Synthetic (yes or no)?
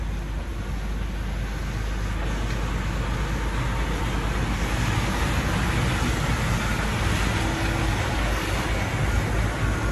no